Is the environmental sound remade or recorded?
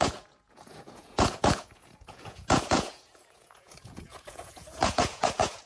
remade